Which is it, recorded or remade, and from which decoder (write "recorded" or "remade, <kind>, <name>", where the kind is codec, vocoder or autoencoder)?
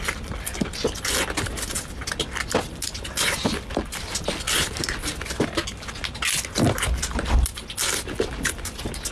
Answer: recorded